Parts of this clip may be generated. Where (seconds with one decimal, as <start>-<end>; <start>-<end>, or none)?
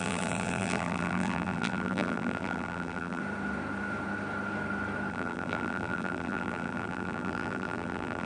0.0-3.2; 5.1-8.2